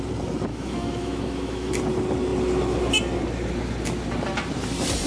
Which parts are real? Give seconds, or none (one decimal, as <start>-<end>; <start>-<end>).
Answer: 0.0-0.5; 1.7-5.1